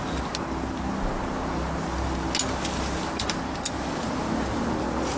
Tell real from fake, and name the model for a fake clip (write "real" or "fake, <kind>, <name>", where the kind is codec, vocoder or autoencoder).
real